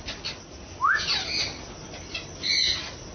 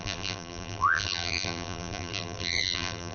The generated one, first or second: second